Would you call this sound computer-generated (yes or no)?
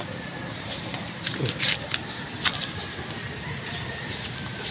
no